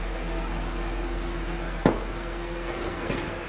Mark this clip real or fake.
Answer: fake